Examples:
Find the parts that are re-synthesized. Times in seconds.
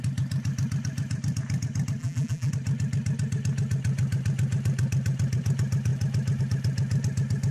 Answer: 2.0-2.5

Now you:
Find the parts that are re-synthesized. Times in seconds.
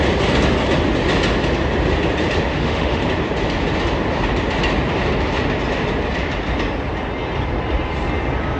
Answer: 2.5-3.0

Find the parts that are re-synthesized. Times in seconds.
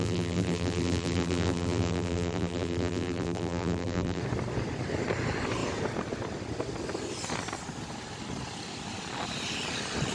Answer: 0.0-4.2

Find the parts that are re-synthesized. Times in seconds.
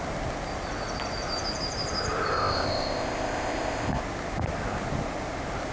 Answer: 2.3-4.0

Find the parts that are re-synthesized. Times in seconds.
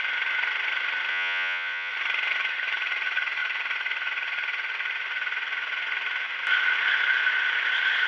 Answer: 1.1-1.9